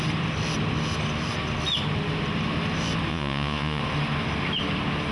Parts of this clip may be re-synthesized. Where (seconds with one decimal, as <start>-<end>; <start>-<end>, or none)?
3.1-3.8